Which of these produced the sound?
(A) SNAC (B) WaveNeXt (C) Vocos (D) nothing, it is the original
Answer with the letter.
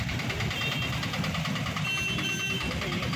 D